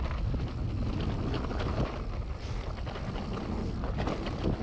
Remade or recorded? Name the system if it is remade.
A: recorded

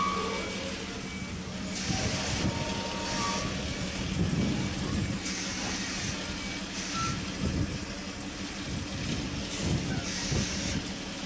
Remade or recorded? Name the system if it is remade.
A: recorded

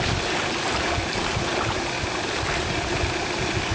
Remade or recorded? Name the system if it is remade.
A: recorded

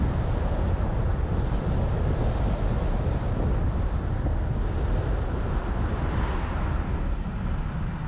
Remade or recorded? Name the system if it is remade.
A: recorded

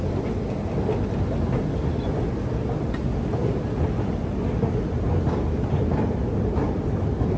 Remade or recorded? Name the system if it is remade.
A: recorded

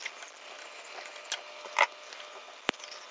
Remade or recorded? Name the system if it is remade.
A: recorded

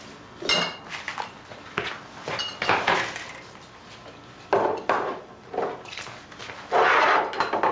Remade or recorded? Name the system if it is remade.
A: recorded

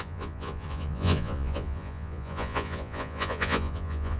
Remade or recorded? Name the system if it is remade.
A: remade, vocoder, Vocos